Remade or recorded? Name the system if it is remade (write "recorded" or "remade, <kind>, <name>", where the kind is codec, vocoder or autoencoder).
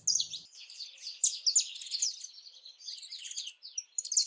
recorded